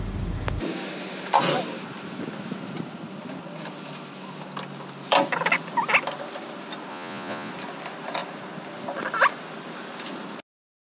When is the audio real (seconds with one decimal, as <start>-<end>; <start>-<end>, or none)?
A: 0.0-6.9; 7.5-10.9